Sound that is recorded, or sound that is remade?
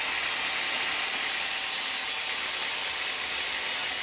recorded